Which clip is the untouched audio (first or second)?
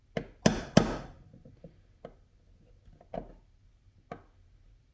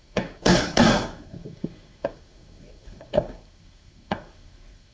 first